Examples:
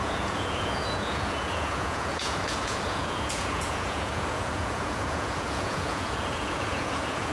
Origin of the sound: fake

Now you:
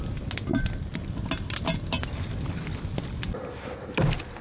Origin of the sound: real